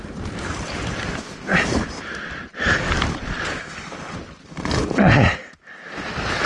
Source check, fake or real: fake